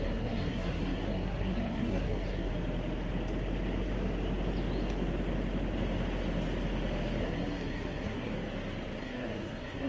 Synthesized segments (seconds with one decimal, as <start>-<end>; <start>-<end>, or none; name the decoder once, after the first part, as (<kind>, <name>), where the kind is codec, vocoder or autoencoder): 0.0-2.5 (codec, SNAC); 7.2-8.3; 9.0-9.9